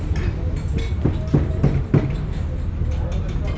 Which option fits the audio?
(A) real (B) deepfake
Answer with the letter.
A